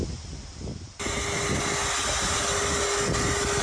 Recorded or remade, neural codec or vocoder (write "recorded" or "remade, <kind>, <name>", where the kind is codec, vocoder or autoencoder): recorded